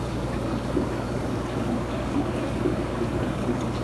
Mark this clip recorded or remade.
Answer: remade